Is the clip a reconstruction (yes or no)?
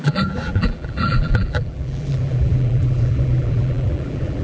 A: yes